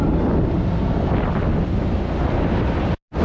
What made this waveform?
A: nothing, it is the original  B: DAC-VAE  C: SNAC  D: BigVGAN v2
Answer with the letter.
A